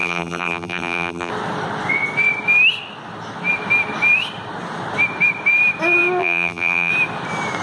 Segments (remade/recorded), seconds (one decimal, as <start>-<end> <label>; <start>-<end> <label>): 0.0-1.3 remade; 1.3-6.2 recorded; 6.2-6.9 remade; 6.9-7.6 recorded